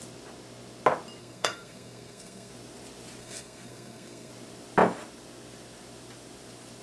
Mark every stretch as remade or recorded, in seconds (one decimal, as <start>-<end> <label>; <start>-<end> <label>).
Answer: 0.0-1.2 recorded; 1.2-2.5 remade; 2.5-3.2 recorded; 3.2-4.3 remade; 4.3-6.8 recorded